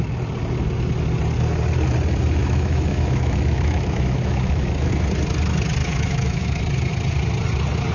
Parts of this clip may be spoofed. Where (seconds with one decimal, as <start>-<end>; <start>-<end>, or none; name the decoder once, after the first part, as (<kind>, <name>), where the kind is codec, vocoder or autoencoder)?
2.4-4.9 (autoencoder, DAC-VAE); 5.8-6.6